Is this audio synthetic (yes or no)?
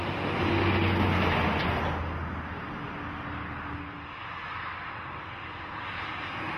no